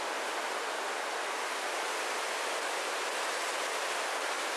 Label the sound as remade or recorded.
recorded